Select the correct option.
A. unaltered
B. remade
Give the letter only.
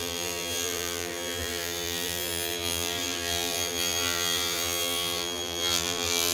B